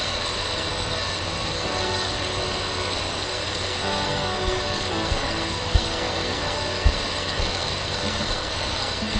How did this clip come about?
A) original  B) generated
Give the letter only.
B